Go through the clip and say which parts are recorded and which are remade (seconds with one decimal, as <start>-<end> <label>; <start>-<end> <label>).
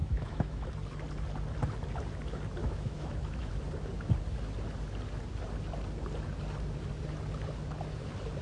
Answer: 0.0-0.7 remade; 0.7-2.6 recorded; 2.6-3.5 remade; 3.5-8.4 recorded